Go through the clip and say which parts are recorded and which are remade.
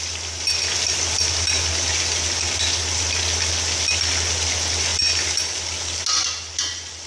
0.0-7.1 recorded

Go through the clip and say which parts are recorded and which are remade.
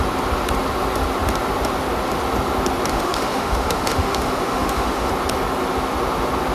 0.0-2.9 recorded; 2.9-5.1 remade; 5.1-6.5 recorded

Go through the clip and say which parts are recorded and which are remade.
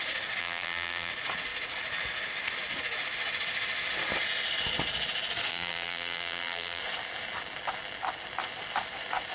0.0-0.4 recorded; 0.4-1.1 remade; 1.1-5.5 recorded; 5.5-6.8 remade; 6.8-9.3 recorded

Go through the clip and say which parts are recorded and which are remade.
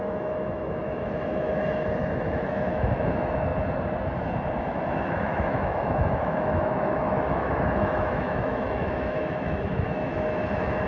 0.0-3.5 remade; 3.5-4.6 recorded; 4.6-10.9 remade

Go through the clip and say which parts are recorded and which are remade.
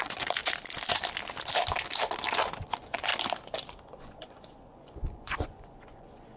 0.0-0.4 remade; 0.4-2.6 recorded; 2.6-3.1 remade; 3.1-3.8 recorded; 3.8-6.4 remade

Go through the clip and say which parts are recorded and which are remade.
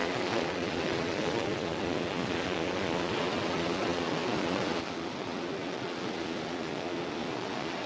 0.0-7.9 remade